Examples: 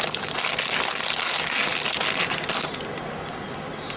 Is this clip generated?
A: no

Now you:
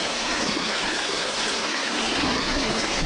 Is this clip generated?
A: yes